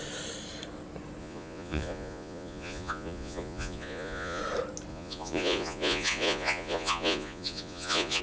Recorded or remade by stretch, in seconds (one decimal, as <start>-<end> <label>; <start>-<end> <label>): 0.0-1.2 recorded; 1.2-4.4 remade; 4.4-4.9 recorded; 4.9-8.2 remade